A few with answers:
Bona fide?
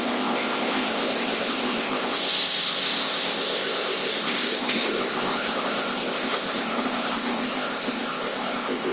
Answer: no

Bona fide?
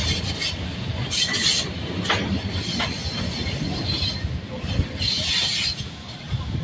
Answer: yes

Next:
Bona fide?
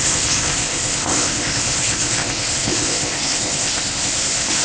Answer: no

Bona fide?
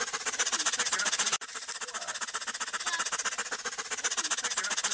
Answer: yes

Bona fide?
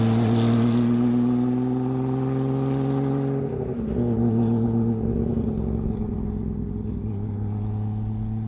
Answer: yes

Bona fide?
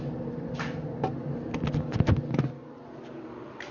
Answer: yes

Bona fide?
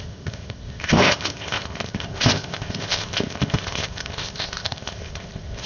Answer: no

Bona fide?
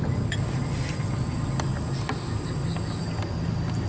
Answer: yes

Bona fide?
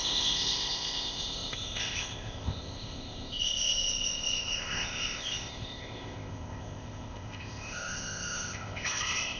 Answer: no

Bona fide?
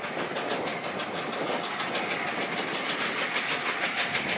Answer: yes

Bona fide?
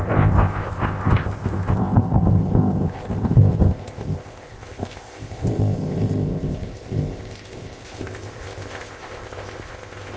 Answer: no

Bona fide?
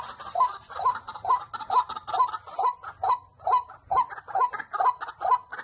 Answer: yes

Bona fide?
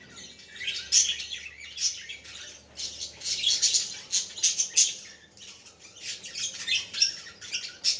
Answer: yes